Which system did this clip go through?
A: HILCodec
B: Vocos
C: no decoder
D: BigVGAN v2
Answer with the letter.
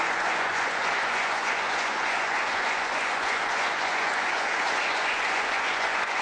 B